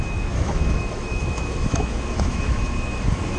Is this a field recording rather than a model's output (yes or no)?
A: no